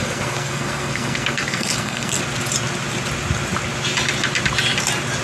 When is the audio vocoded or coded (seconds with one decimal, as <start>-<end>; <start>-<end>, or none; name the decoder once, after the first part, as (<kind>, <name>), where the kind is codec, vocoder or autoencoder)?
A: 0.0-2.2 (codec, SNAC)